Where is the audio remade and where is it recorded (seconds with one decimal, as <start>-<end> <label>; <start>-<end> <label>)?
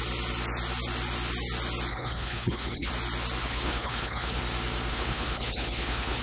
0.0-1.9 recorded; 1.9-2.9 remade; 2.9-3.4 recorded; 3.4-4.4 remade; 4.4-4.9 recorded; 4.9-6.2 remade